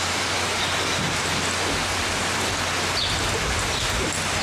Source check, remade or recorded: recorded